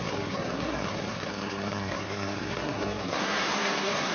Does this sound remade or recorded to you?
remade